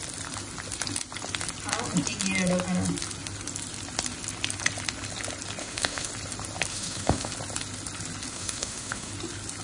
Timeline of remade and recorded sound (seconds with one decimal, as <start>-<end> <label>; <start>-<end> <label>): 0.0-5.6 recorded; 5.6-6.1 remade; 6.1-6.7 recorded; 6.7-7.3 remade; 7.3-8.3 recorded; 8.3-9.1 remade; 9.1-9.6 recorded